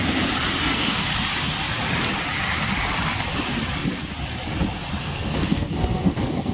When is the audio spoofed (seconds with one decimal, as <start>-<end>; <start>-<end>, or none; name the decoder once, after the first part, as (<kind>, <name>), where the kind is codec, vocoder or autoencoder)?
0.6-1.1 (codec, SNAC); 5.0-6.5